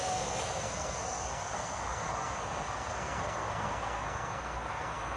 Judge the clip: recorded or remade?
remade